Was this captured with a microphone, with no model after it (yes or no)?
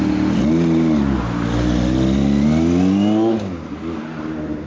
yes